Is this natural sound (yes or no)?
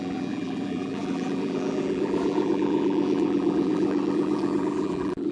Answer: no